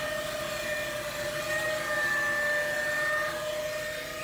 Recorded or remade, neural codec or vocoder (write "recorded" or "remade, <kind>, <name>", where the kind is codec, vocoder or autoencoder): recorded